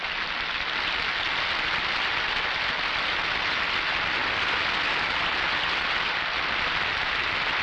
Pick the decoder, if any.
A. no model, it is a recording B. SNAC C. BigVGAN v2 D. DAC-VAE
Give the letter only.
A